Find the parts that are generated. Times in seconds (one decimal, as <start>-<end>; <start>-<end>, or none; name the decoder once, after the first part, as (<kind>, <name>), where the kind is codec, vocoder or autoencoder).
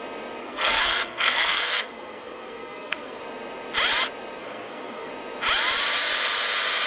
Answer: 0.4-3.2 (codec, SNAC); 4.4-5.1